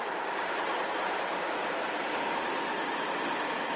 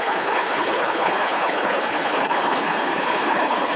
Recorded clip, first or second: first